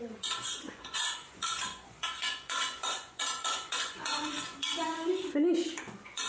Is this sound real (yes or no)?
no